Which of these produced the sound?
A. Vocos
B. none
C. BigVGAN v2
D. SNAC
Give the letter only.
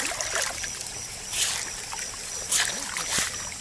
C